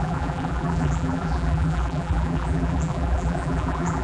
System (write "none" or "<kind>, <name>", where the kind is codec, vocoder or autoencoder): vocoder, BigVGAN v2